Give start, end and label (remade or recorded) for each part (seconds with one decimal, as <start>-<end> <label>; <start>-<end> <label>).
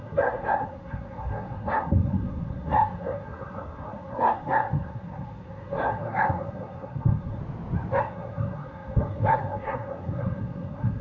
0.0-7.4 remade; 7.4-8.0 recorded; 8.0-11.0 remade